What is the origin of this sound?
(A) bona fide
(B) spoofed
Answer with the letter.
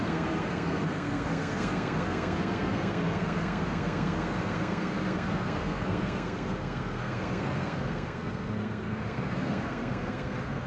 B